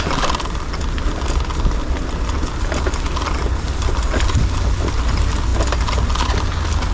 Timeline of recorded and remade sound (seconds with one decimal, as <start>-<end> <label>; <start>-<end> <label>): 0.0-6.9 recorded